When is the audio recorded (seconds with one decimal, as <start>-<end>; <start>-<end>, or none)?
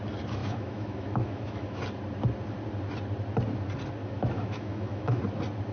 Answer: 0.0-0.4; 1.8-4.0; 5.2-5.7